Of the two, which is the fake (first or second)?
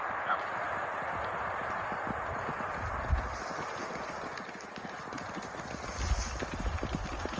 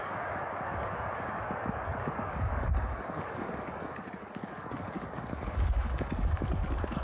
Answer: second